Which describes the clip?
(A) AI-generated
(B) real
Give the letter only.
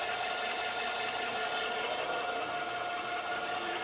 B